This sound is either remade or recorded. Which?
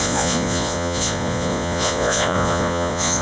remade